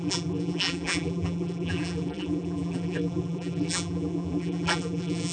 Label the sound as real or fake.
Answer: fake